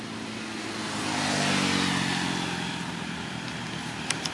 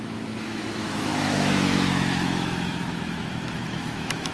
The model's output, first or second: second